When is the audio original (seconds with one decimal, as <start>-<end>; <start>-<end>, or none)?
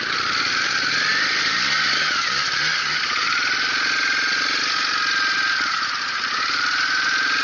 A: 0.0-7.4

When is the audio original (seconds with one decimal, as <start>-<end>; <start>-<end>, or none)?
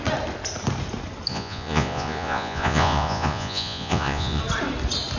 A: 0.0-1.3; 4.4-5.2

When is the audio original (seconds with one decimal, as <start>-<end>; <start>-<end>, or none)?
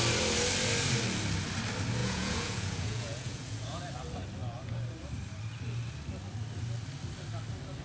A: 0.0-2.0; 3.8-7.8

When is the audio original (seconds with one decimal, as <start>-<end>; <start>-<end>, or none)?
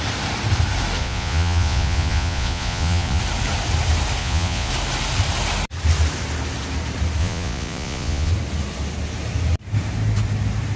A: 0.0-1.0; 3.2-4.2; 4.7-7.2; 8.3-10.8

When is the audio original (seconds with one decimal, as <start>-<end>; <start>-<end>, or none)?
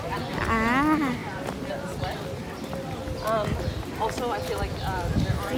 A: 0.0-5.6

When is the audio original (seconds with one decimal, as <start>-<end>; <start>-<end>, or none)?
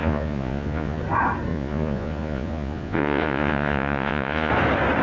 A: 1.0-1.5; 4.5-5.0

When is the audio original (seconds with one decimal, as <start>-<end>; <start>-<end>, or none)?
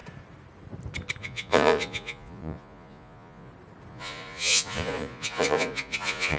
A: 0.0-1.2; 3.5-3.9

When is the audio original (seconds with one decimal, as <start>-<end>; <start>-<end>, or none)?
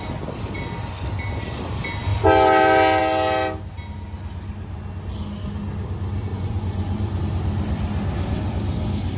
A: 0.0-6.3; 7.2-9.2